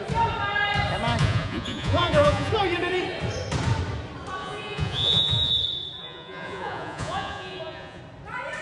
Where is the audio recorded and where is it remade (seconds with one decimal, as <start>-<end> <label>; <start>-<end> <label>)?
0.0-1.2 recorded; 1.2-2.5 remade; 2.5-4.4 recorded; 4.4-5.5 remade; 5.5-6.0 recorded; 6.0-8.0 remade; 8.0-8.6 recorded

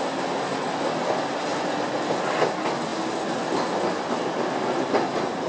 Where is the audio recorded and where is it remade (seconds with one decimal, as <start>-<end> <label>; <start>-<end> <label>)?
0.0-5.5 recorded